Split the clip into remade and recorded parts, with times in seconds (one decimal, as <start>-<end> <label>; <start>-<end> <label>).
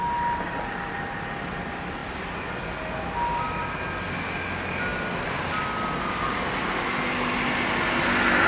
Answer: 0.0-8.5 recorded